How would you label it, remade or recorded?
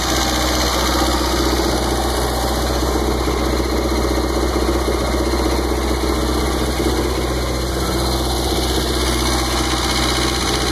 recorded